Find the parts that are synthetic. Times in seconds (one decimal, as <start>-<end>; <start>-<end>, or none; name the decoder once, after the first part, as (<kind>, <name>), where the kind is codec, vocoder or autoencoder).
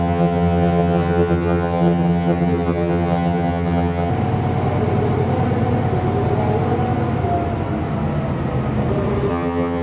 0.0-4.1 (vocoder, HiFi-GAN); 9.3-9.8